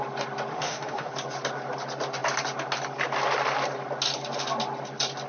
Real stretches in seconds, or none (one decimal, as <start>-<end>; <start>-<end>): 0.0-0.5; 1.1-5.3